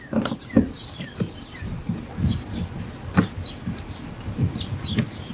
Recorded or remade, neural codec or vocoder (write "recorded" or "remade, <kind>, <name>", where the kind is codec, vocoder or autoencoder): recorded